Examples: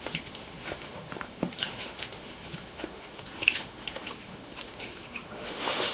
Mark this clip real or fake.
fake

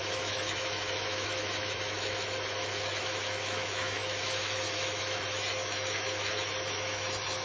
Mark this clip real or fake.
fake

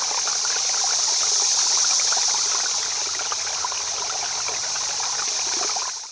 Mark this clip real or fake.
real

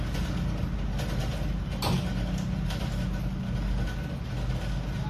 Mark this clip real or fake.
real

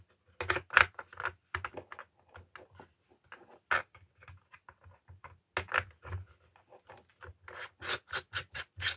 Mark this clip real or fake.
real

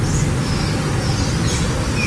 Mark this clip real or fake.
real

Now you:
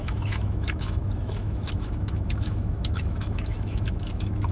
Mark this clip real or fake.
fake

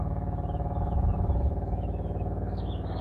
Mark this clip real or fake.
fake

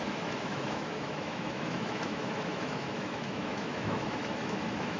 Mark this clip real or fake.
fake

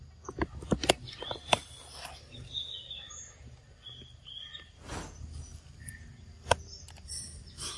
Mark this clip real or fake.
real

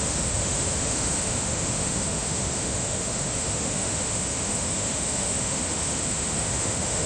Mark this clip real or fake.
fake